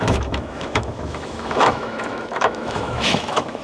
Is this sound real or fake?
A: fake